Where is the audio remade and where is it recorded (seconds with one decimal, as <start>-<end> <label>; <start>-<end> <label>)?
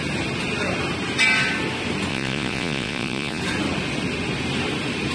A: 0.0-2.1 recorded; 2.1-3.4 remade; 3.4-5.1 recorded